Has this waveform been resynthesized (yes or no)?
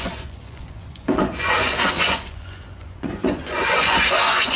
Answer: yes